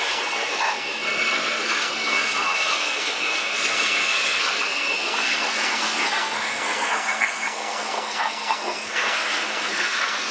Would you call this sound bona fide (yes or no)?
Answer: no